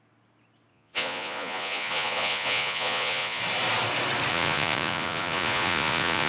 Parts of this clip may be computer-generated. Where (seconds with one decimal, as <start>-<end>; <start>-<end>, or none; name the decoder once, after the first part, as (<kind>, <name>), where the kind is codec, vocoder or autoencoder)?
0.7-3.4 (vocoder, Vocos); 4.3-6.3